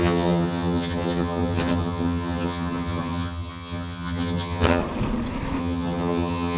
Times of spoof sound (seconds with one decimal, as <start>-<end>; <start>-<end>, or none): 0.0-4.8; 5.6-6.6